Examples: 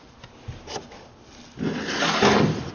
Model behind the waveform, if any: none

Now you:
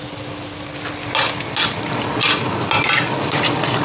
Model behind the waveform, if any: none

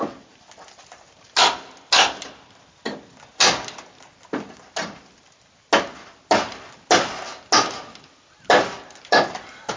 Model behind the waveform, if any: none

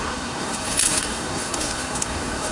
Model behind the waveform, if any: codec, SNAC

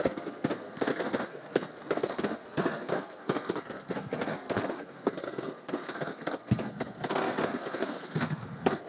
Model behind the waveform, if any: codec, SNAC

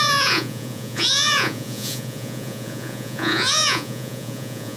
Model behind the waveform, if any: vocoder, Vocos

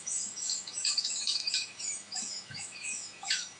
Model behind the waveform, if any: autoencoder, DAC-VAE